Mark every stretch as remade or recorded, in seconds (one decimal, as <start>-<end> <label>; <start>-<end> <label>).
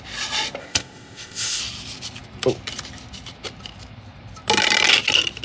0.0-0.6 recorded; 0.6-1.6 remade; 1.6-5.4 recorded